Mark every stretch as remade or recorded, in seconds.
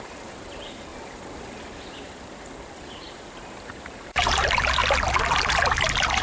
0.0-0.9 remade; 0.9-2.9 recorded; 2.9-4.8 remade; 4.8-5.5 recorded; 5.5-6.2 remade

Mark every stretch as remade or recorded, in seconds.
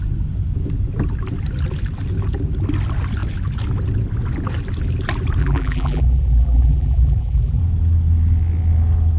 0.0-5.4 recorded; 5.4-7.6 remade; 7.6-9.2 recorded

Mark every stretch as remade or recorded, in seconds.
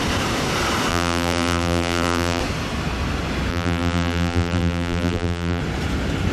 0.0-0.9 recorded; 0.9-2.4 remade; 2.4-3.5 recorded; 3.5-5.6 remade; 5.6-6.3 recorded